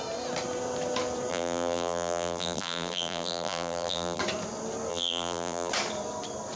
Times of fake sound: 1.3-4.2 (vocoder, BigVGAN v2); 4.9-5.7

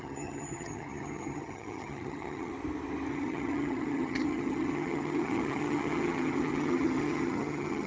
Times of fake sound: 0.0-2.5 (vocoder, HiFi-GAN); 3.1-7.9

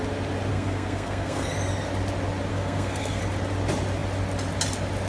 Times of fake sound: 0.5-1.5 (codec, SNAC); 2.5-3.2

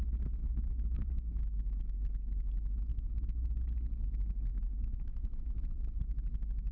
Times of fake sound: 0.4-1.8 (autoencoder, DAC-VAE); 2.9-3.6; 4.5-5.6

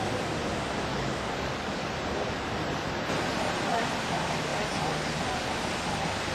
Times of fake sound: 0.9-1.9 (codec, DAC)

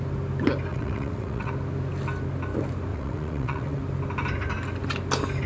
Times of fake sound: 0.7-1.5 (vocoder, WaveNeXt); 2.9-3.8